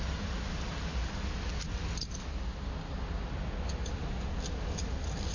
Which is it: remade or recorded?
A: recorded